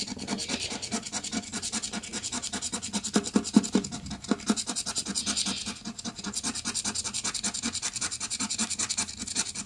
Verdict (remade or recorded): recorded